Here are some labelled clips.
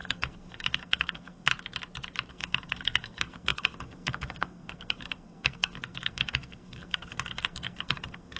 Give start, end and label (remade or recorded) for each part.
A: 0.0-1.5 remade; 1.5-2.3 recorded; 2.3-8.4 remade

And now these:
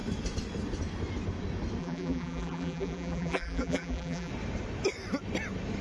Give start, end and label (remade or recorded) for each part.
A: 0.0-1.8 recorded; 1.8-4.3 remade; 4.3-5.8 recorded

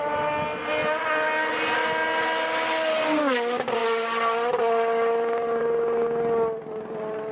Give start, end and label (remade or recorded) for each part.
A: 0.0-7.3 recorded

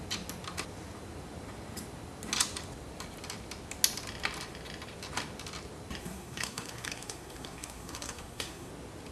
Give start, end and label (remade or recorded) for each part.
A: 0.0-6.0 recorded; 6.0-8.7 remade; 8.7-9.1 recorded